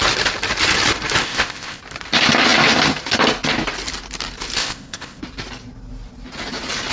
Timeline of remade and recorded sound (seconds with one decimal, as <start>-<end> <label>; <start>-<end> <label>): 0.0-1.2 recorded; 1.2-1.8 remade; 1.8-4.6 recorded; 4.6-5.2 remade; 5.2-6.9 recorded